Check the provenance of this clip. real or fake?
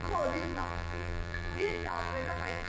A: fake